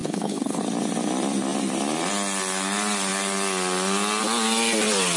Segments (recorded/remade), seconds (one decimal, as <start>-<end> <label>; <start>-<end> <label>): 0.0-0.6 remade; 0.6-5.2 recorded